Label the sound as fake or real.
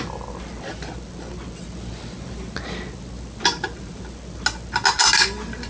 real